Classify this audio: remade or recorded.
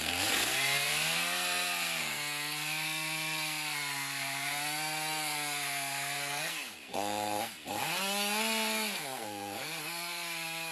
remade